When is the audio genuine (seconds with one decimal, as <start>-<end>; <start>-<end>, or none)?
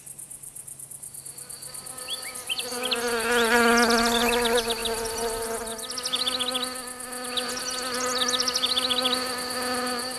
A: 0.0-10.2